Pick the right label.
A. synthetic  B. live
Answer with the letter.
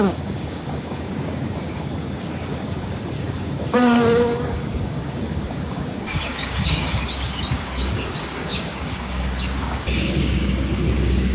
A